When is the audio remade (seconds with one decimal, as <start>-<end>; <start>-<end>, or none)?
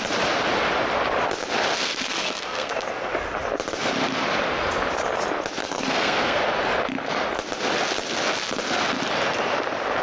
1.8-2.7; 5.6-6.4